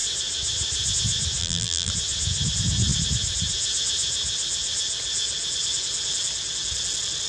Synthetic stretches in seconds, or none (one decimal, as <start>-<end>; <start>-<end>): 1.4-1.9